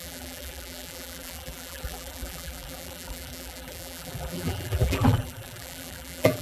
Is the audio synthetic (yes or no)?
yes